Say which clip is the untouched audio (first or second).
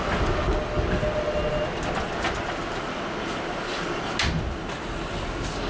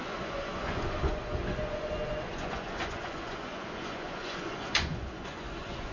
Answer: first